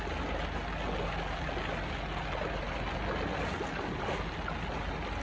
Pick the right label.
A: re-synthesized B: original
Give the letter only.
B